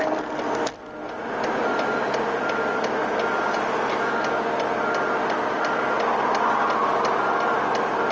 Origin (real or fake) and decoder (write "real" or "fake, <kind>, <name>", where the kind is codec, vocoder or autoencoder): real